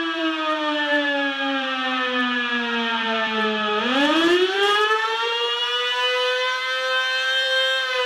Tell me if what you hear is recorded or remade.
remade